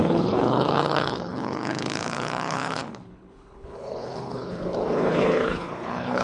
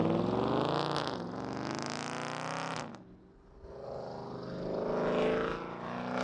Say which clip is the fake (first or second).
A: first